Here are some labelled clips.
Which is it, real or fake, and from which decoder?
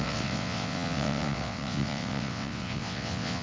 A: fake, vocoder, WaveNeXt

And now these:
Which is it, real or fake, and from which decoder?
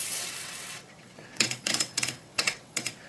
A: fake, vocoder, WaveNeXt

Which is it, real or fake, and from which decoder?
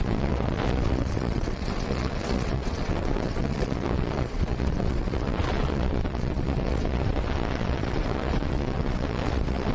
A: fake, vocoder, WaveNeXt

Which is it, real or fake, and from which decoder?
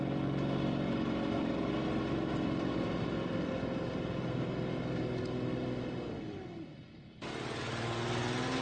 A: real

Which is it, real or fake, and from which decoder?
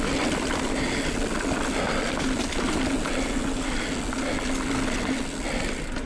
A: real